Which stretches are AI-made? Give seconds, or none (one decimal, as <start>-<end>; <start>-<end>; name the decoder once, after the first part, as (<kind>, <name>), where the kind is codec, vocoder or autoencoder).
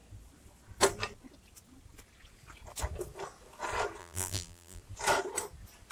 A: 4.0-4.8 (vocoder, BigVGAN v2)